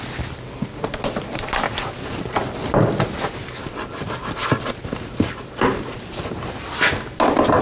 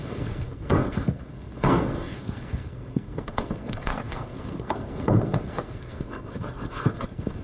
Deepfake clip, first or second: second